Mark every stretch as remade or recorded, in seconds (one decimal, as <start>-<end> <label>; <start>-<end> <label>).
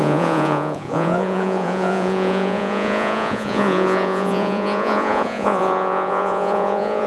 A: 0.0-7.1 remade